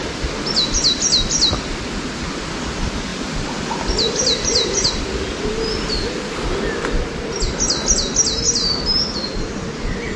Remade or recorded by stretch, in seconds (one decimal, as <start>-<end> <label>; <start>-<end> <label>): 0.0-3.1 recorded; 3.1-4.9 remade; 4.9-10.2 recorded